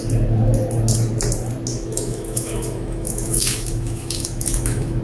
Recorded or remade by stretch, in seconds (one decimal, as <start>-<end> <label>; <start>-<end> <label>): 0.0-1.7 recorded; 1.7-5.0 remade